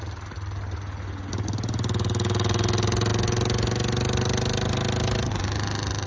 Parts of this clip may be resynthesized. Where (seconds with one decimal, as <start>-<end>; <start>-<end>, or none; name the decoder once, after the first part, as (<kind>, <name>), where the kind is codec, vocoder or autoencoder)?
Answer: none